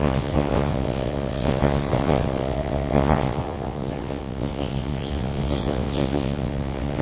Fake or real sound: fake